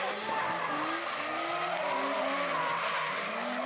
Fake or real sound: real